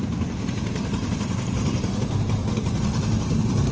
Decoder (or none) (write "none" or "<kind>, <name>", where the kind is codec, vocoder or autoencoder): vocoder, BigVGAN v2